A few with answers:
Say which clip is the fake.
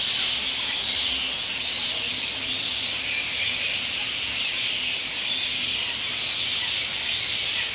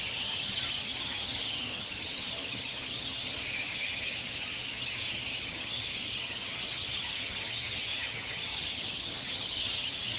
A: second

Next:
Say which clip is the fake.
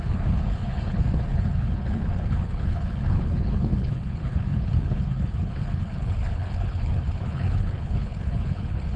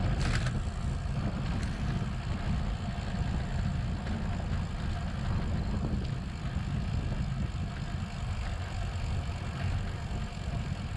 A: first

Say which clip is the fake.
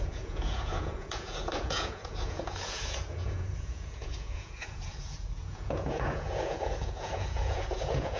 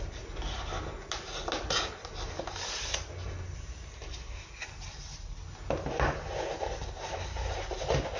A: first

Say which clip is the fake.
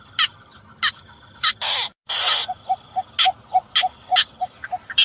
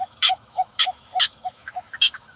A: second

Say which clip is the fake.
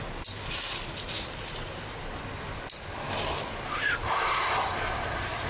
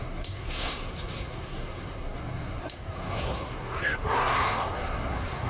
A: second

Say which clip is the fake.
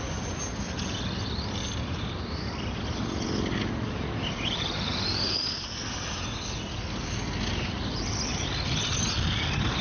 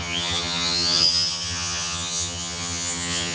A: second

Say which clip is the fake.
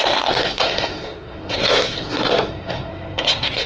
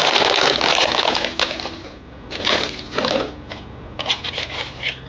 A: first